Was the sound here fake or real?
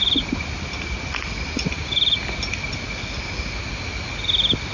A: real